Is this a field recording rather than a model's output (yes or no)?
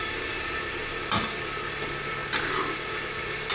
no